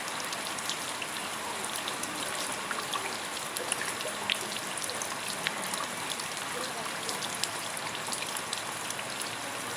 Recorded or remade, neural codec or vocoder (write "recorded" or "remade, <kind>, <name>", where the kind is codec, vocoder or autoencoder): recorded